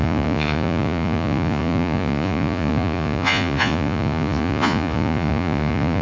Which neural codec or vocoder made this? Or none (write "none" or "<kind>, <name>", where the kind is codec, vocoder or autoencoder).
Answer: vocoder, Vocos